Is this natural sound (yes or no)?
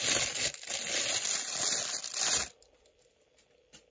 yes